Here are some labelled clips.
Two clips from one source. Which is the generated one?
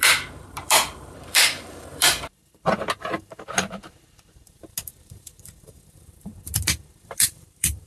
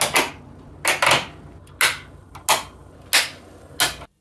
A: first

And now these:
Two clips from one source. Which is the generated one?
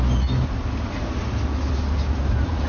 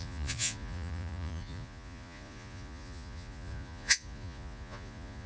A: second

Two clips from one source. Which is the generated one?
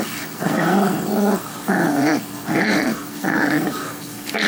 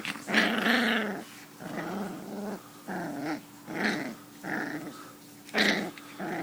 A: first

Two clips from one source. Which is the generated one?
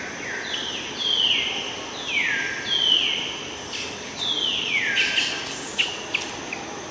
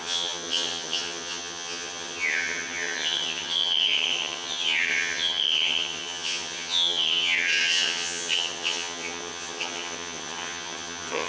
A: second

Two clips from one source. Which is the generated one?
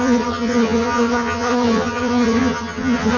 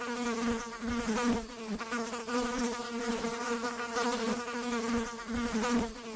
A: first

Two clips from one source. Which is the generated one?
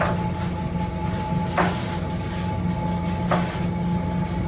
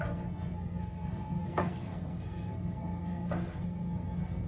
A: second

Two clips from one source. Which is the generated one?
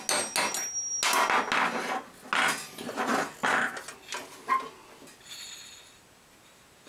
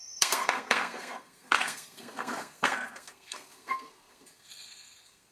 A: second